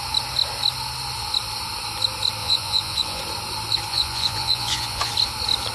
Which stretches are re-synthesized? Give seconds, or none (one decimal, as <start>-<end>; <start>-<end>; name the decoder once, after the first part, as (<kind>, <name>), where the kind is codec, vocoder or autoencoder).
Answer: 2.4-3.2 (vocoder, Vocos); 3.9-5.1